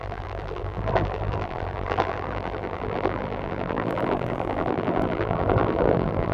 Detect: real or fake fake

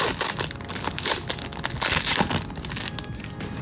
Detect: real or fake real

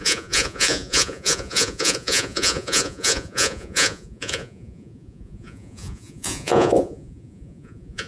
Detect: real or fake fake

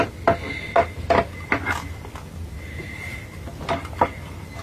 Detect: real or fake real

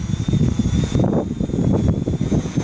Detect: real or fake real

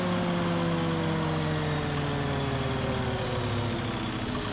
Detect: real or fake real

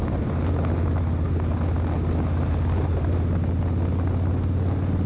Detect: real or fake real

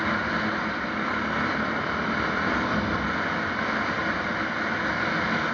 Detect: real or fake real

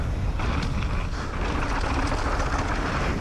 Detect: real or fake real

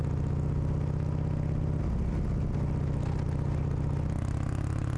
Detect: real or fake real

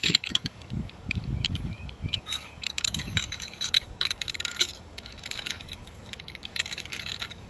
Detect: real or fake fake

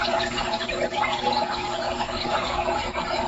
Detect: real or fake fake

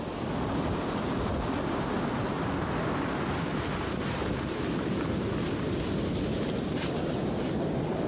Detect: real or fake real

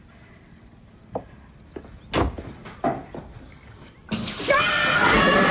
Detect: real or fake real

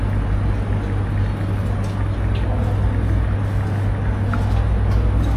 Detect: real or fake real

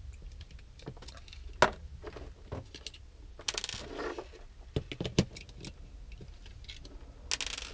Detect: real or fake real